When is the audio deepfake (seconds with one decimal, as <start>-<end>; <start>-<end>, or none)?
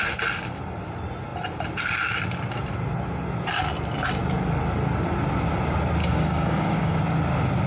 6.0-7.0